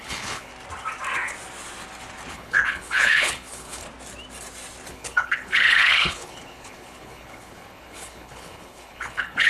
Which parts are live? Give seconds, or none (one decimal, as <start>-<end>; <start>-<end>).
0.5-2.3; 3.8-4.9